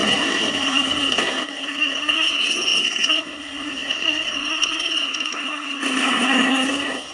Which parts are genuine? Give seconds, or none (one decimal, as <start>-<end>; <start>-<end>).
none